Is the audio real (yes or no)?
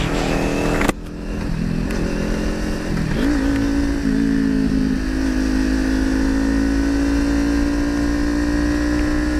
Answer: yes